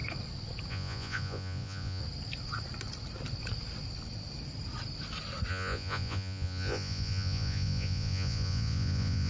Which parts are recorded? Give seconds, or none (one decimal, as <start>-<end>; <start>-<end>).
0.0-0.7; 2.0-5.5

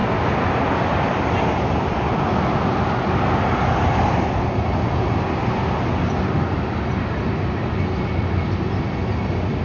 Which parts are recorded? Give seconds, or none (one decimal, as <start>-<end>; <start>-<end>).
0.0-9.6

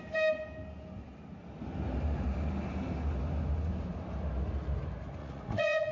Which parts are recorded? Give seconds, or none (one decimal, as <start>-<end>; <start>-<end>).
0.0-5.2

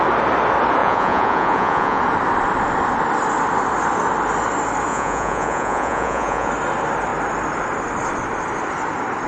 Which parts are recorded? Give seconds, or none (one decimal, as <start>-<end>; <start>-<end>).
0.0-0.8; 2.0-4.9; 6.5-9.3